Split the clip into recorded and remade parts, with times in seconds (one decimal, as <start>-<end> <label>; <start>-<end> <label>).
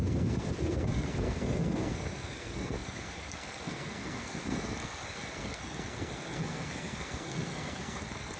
0.0-8.4 remade